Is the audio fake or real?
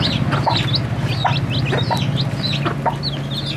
real